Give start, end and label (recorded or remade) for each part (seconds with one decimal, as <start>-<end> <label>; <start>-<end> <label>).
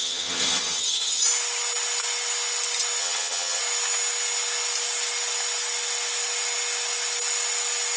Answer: 0.0-1.2 remade; 1.2-3.0 recorded; 3.0-3.6 remade; 3.6-8.0 recorded